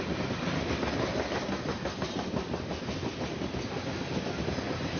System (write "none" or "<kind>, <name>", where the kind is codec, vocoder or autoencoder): none